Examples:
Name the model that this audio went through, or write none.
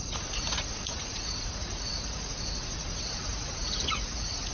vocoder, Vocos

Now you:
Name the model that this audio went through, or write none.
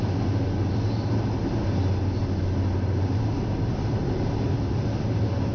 none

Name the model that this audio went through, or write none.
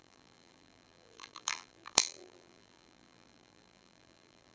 vocoder, BigVGAN v2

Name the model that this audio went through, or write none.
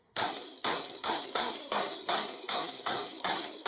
codec, SNAC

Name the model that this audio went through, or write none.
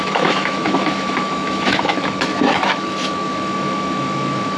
autoencoder, DAC-VAE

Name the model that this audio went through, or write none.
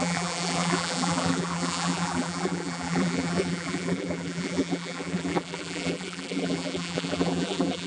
vocoder, BigVGAN v2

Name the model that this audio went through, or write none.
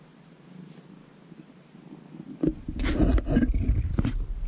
none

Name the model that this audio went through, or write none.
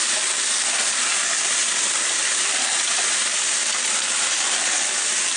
vocoder, BigVGAN v2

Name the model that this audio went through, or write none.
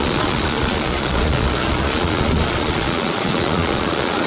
vocoder, Vocos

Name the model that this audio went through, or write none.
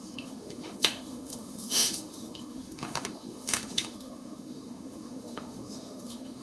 autoencoder, DAC-VAE